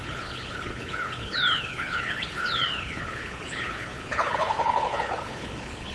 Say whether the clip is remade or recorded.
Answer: remade